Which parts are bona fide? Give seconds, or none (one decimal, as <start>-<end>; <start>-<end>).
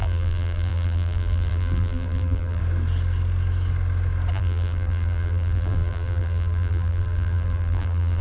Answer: 2.6-4.3